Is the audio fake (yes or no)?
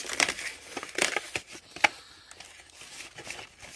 no